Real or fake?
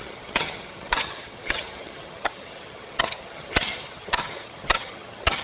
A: fake